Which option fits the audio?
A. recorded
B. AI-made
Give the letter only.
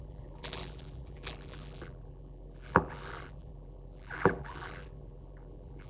B